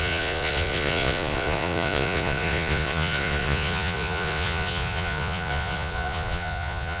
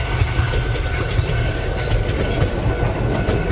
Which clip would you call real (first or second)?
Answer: second